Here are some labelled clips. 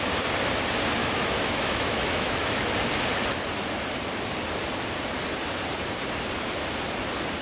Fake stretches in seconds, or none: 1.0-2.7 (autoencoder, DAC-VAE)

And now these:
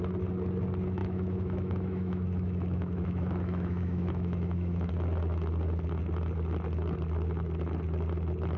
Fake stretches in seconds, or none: 1.0-4.9 (autoencoder, DAC-VAE)

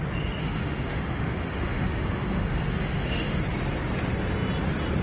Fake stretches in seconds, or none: 0.4-3.4 (autoencoder, DAC-VAE)